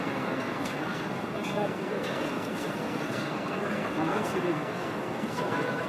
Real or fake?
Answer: fake